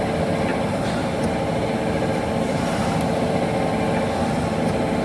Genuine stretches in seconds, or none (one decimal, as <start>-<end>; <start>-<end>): 0.0-0.5; 3.5-5.0